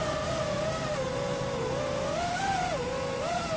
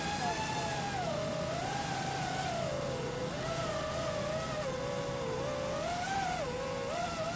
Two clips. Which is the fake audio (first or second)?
first